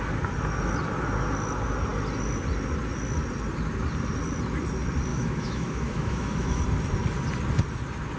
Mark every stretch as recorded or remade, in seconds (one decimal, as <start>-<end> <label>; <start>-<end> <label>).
0.0-5.1 recorded; 5.1-6.6 remade; 6.6-8.2 recorded